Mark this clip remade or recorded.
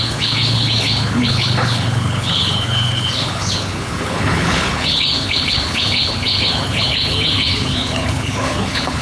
remade